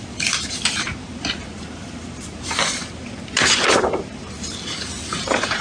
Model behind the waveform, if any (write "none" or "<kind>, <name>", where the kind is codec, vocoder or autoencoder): vocoder, BigVGAN v2